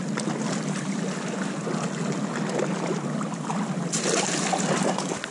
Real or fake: real